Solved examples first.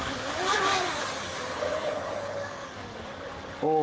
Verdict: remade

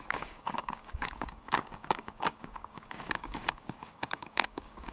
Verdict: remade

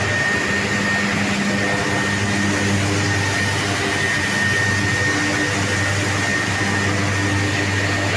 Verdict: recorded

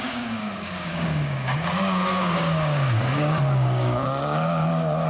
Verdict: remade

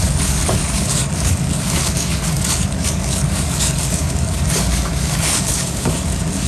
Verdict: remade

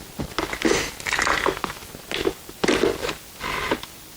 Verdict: recorded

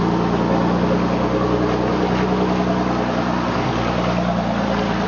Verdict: recorded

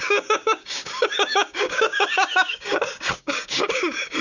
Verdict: remade